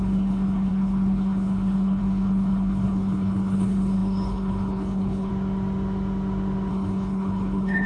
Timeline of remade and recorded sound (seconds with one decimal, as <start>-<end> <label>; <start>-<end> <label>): 0.0-5.3 remade; 5.3-6.7 recorded; 6.7-7.9 remade